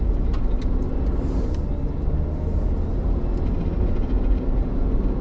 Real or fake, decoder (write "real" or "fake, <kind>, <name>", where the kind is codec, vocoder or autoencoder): real